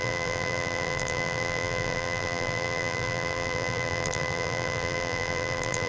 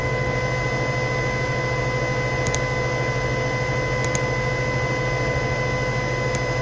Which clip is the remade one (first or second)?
first